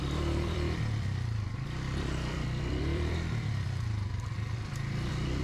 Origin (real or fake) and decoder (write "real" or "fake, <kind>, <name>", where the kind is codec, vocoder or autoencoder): fake, vocoder, BigVGAN v2